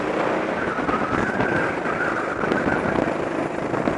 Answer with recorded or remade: recorded